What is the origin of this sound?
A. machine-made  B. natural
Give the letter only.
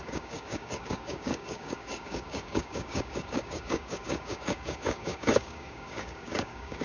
A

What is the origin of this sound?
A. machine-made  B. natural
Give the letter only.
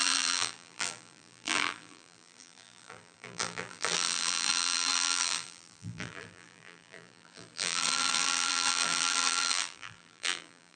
A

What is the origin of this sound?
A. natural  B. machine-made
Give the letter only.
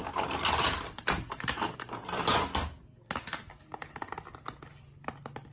A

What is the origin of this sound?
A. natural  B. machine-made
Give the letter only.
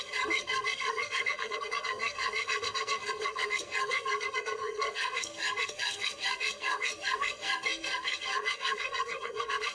B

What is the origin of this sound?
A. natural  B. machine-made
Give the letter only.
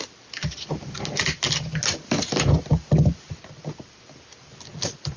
A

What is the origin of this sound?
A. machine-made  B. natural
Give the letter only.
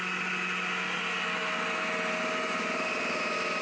B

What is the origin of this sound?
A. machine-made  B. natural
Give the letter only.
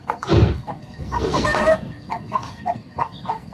A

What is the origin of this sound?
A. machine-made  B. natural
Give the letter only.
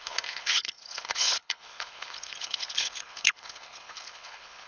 A